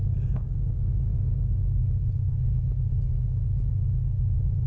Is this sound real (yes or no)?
no